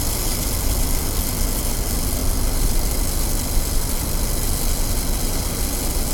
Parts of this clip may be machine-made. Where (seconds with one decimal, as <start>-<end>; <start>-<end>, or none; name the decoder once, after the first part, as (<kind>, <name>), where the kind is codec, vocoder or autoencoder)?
none